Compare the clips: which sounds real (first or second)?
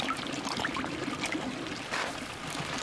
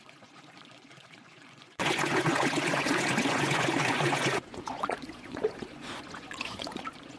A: first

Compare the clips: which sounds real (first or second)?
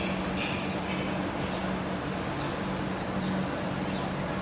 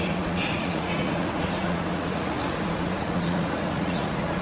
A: first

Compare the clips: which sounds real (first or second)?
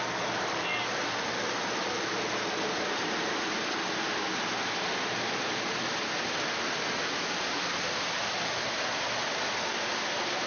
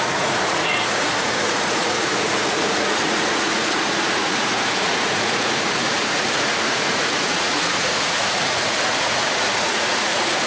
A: first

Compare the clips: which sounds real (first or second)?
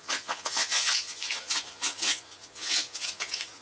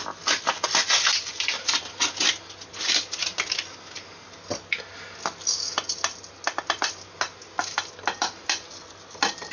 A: second